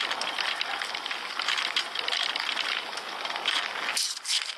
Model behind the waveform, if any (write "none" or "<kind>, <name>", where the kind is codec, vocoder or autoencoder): none